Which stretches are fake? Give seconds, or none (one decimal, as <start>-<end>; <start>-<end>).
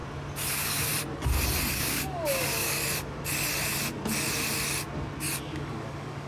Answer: 0.5-0.9; 1.7-2.8; 5.4-6.3